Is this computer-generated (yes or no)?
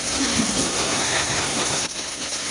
yes